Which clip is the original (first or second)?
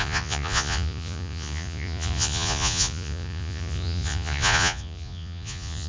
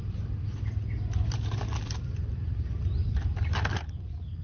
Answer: second